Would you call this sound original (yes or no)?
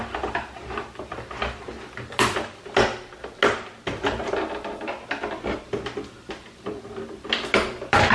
yes